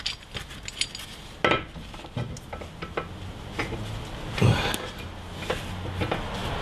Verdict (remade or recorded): recorded